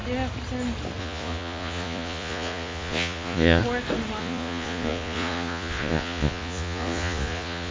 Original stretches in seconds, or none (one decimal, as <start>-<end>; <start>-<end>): 0.0-1.0; 3.6-4.2